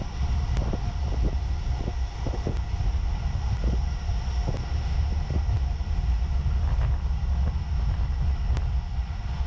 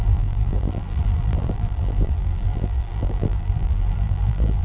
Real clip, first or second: first